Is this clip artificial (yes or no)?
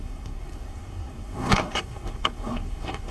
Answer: yes